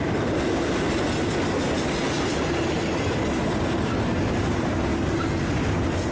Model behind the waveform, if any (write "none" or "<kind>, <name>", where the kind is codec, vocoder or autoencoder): none